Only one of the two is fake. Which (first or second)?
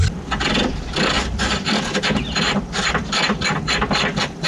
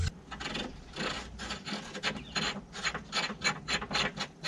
first